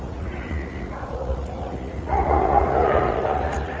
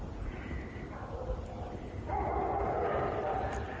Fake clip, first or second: first